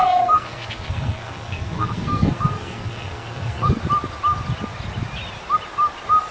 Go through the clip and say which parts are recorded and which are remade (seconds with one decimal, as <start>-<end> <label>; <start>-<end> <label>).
0.0-3.8 remade; 3.8-6.3 recorded